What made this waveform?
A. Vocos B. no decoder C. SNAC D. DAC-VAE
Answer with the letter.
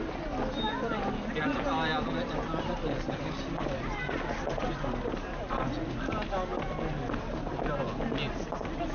B